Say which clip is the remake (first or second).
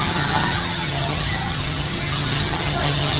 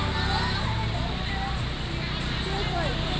first